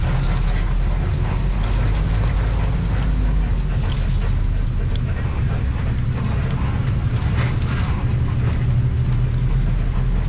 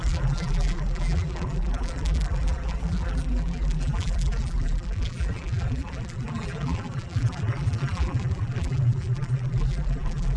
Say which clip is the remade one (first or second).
second